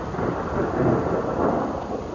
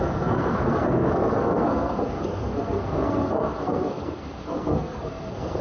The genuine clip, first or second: first